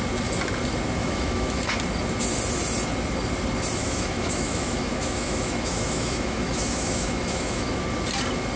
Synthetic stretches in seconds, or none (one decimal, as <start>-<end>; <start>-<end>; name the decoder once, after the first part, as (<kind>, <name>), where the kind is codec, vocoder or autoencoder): 1.0-1.7 (autoencoder, DAC-VAE); 3.8-7.8